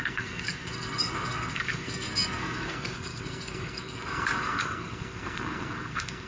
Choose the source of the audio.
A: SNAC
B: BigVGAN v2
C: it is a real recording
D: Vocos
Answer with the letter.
A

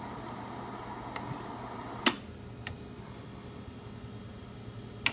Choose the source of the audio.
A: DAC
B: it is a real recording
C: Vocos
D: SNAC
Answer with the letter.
B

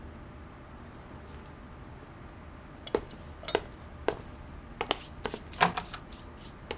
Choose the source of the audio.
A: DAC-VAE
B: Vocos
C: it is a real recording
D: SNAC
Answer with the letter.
C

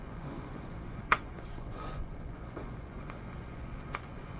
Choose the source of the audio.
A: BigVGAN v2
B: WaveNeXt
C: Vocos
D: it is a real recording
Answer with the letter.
C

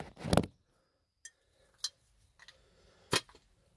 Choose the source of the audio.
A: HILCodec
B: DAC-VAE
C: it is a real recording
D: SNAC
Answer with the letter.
C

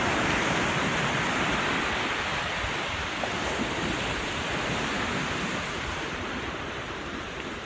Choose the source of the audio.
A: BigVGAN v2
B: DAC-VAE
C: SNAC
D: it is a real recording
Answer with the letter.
D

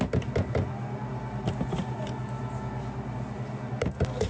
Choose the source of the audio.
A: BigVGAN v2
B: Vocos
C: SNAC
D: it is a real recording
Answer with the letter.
D